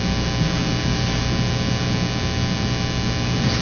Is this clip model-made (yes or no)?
no